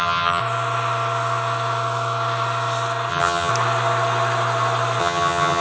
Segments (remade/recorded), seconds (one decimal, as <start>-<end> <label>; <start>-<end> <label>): 0.0-0.4 remade; 0.4-3.1 recorded; 3.1-3.5 remade; 3.5-5.0 recorded; 5.0-5.6 remade